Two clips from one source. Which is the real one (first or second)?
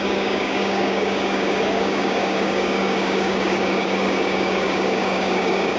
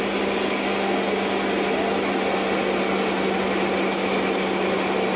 second